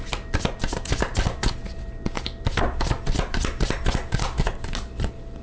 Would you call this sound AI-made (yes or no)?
no